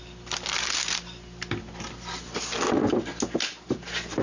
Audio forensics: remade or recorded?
recorded